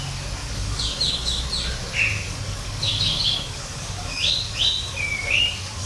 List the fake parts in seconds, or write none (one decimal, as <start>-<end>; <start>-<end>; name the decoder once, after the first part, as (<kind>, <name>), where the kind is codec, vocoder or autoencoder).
0.4-1.4 (codec, DAC); 2.3-5.9